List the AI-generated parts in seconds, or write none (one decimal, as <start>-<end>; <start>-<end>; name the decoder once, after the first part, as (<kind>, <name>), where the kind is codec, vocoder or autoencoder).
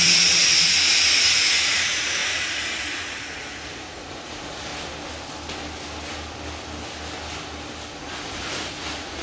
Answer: 0.0-4.7 (vocoder, Vocos); 8.0-9.2